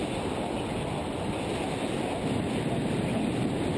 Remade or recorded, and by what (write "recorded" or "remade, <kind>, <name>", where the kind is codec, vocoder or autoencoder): recorded